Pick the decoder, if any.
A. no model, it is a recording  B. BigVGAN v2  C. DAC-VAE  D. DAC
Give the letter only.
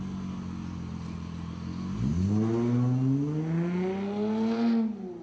A